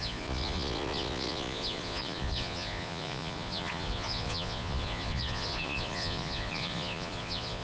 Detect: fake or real fake